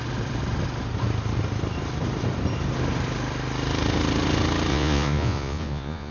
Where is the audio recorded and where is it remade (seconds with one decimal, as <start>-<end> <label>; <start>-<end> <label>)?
0.0-4.7 recorded; 4.7-6.1 remade